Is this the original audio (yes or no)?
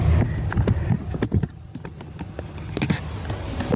yes